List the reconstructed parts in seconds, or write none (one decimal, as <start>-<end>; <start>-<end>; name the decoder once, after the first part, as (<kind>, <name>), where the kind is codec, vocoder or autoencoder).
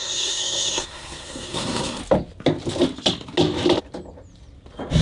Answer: 0.0-2.0 (codec, SNAC)